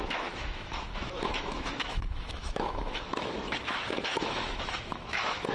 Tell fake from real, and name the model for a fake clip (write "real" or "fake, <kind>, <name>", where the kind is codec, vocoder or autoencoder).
fake, autoencoder, DAC-VAE